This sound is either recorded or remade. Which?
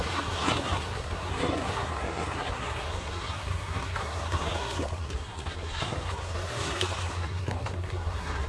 remade